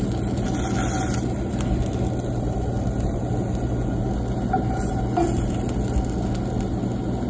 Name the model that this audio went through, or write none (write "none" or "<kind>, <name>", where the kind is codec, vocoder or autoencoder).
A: none